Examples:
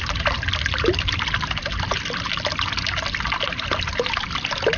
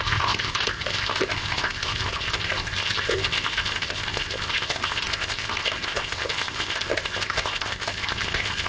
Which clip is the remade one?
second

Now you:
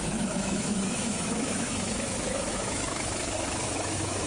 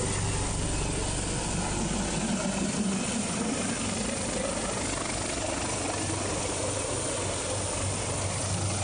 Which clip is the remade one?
first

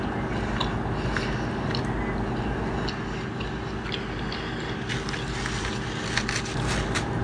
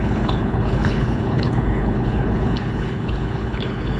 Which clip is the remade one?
second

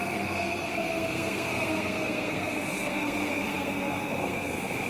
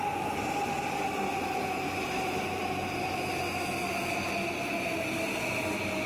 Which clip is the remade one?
first